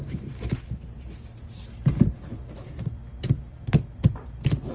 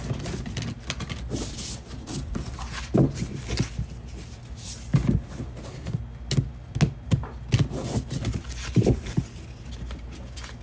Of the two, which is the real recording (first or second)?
second